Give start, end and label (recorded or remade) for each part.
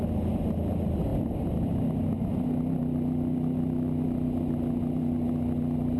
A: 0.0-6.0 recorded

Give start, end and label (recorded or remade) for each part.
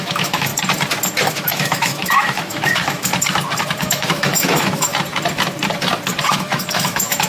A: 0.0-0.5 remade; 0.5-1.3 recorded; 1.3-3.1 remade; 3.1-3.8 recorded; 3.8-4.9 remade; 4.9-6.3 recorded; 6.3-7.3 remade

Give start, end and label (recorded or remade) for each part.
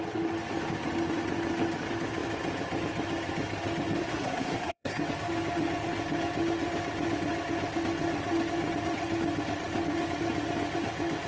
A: 0.0-4.1 recorded; 4.1-5.0 remade; 5.0-11.3 recorded